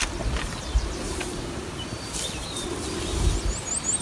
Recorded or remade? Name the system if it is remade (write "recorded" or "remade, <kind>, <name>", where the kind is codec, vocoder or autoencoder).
recorded